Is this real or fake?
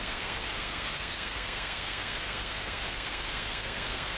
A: fake